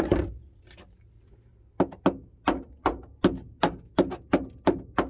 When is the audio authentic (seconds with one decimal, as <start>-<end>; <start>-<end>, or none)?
0.0-5.1